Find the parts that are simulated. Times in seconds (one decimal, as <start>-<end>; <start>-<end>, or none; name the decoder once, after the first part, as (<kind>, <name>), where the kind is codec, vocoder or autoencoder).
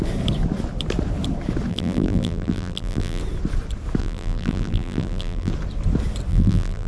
1.7-3.2 (vocoder, BigVGAN v2); 4.0-5.5; 6.3-6.9